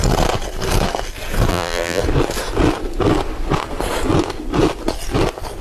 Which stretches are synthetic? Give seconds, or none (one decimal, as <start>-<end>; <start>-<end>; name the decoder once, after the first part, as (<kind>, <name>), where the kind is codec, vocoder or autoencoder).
1.5-2.0 (vocoder, BigVGAN v2)